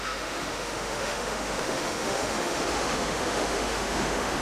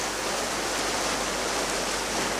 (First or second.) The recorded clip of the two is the second